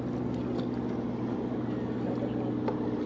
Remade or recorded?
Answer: recorded